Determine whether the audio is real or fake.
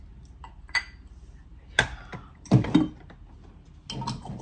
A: real